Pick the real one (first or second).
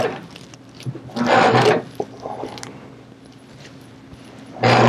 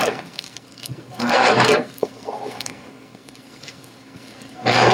first